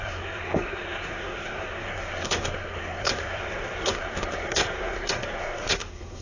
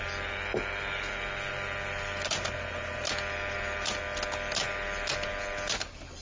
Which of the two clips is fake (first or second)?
first